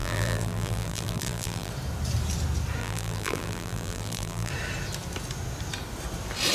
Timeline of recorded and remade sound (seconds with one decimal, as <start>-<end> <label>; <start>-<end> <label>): 0.0-1.7 remade; 1.7-2.8 recorded; 2.8-4.5 remade; 4.5-6.5 recorded